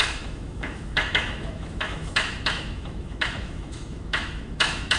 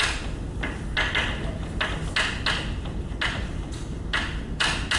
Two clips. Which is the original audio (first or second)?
second